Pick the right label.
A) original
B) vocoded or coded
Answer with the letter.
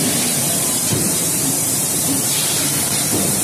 B